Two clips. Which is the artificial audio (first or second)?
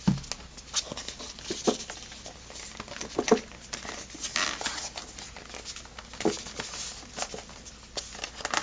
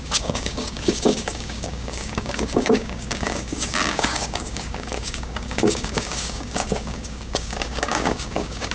second